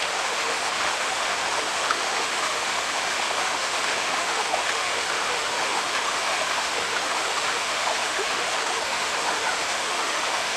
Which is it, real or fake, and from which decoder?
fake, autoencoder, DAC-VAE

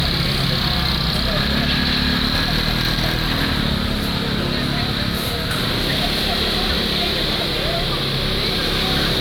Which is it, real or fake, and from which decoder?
real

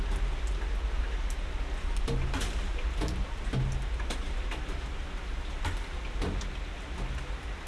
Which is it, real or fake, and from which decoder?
real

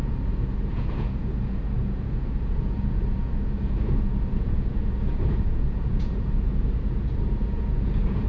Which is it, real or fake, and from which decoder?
fake, vocoder, Vocos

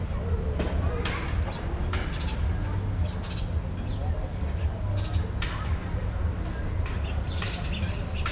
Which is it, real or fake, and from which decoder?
real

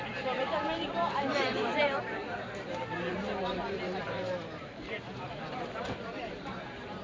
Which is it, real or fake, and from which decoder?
fake, vocoder, BigVGAN v2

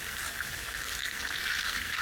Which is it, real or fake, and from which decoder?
fake, codec, SNAC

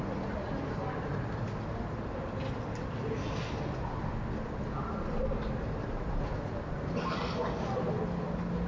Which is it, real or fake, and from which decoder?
real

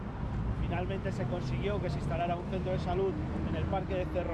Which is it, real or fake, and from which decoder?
real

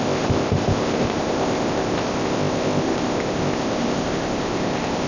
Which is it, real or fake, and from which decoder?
fake, codec, ZipCodec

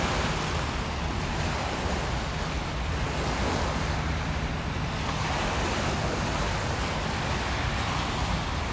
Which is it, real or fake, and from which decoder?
real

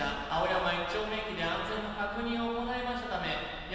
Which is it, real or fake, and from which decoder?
real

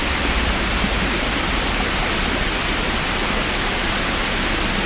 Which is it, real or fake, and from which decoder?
real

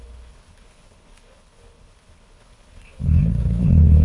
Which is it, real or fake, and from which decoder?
fake, codec, HILCodec